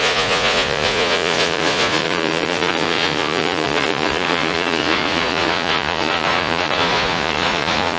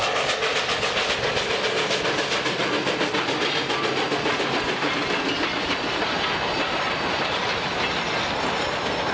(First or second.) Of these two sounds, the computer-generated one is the first